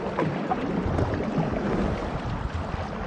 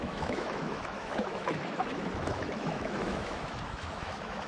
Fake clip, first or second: second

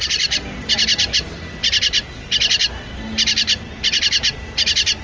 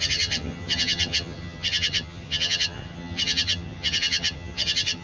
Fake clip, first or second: second